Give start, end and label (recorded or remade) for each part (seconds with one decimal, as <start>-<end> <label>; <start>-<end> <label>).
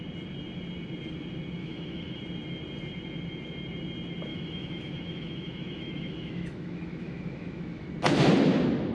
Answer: 0.0-1.6 recorded; 1.6-2.2 remade; 2.2-4.3 recorded; 4.3-7.9 remade; 7.9-8.9 recorded